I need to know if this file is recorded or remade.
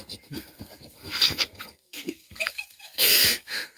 remade